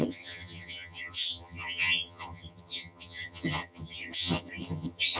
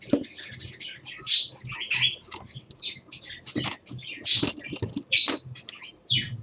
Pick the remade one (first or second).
first